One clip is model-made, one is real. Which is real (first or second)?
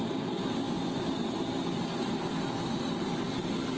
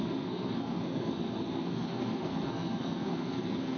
first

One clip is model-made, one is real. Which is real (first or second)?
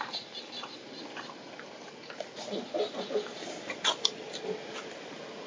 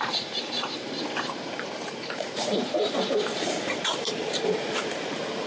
first